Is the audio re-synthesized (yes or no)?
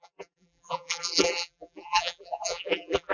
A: yes